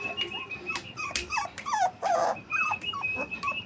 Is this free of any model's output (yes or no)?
no